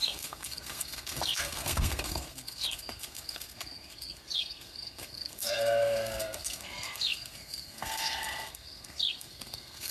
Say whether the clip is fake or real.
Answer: fake